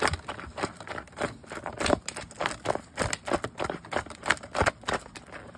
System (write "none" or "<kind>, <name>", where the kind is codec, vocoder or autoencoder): none